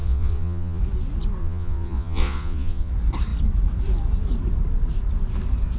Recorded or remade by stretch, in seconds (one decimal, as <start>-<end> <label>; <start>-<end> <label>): 0.0-0.8 remade; 0.8-1.4 recorded; 1.4-2.9 remade; 2.9-5.8 recorded